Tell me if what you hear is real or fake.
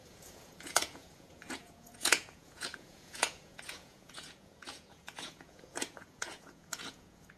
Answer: fake